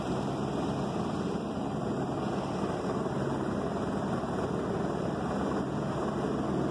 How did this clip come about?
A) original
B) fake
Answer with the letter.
A